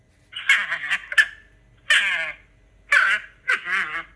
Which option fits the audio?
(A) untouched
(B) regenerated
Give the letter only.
A